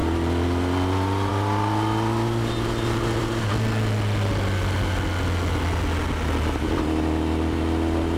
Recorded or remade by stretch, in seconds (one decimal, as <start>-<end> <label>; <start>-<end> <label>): 0.0-8.2 recorded